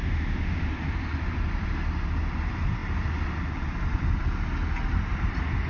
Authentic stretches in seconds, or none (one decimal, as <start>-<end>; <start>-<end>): 0.7-5.7